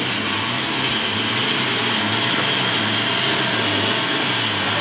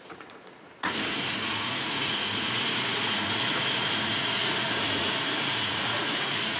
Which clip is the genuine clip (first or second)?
first